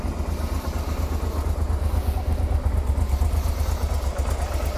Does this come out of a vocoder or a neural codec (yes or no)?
no